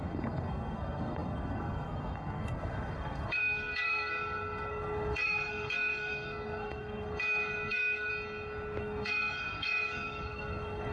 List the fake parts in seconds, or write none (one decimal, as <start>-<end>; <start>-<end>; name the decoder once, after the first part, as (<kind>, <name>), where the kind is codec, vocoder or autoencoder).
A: 0.0-8.1 (codec, SNAC); 8.8-10.9